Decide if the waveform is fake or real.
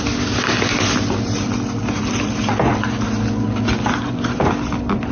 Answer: real